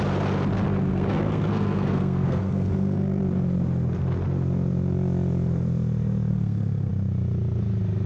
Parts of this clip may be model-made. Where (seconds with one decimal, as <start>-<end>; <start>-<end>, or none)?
0.9-3.2; 6.3-6.9